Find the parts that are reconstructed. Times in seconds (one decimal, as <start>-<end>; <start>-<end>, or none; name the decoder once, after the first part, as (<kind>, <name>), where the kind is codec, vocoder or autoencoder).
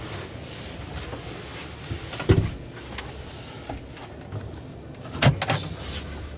none